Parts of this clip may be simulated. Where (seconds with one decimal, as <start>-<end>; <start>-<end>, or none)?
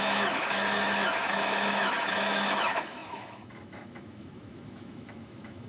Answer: 0.0-5.7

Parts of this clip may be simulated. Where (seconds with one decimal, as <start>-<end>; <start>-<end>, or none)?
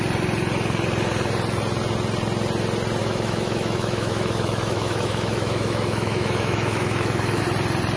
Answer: 3.0-7.4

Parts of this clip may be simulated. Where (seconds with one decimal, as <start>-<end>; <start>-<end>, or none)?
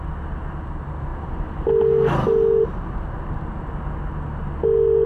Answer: none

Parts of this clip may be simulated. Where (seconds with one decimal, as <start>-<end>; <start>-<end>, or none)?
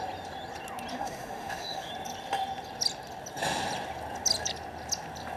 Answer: 0.9-1.9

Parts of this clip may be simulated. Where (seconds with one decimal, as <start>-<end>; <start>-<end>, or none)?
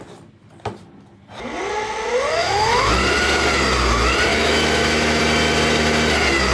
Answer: 2.4-2.9; 4.3-5.2